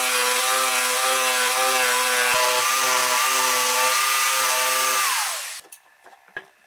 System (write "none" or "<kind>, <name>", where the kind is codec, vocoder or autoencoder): none